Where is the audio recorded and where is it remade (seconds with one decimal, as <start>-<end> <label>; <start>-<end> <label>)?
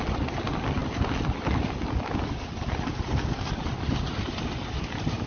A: 0.0-5.3 recorded